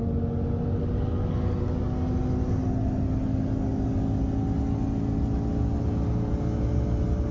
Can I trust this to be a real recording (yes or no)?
yes